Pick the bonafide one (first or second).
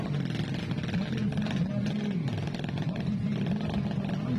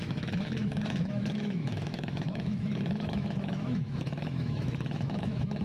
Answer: first